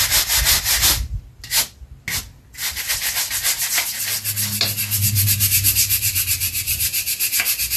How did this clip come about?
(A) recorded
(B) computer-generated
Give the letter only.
A